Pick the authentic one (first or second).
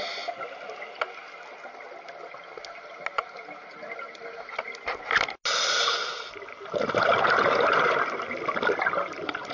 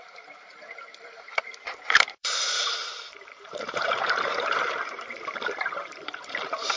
first